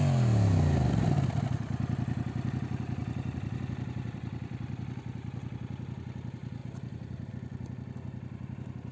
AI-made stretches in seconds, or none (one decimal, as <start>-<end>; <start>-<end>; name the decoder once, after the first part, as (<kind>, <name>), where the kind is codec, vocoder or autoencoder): 3.0-3.6 (vocoder, BigVGAN v2); 6.6-7.3